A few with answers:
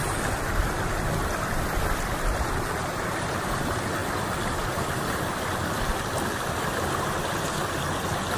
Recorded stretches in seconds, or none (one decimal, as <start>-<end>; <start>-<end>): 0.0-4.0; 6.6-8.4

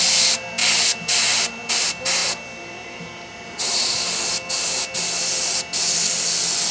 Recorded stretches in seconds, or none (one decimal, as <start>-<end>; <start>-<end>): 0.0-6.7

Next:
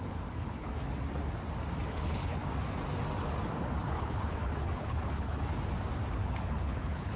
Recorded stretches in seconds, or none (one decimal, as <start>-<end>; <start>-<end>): 0.7-1.9; 2.4-3.8; 5.5-6.2